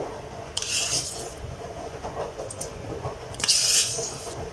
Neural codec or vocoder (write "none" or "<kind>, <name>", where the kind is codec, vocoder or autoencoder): vocoder, Vocos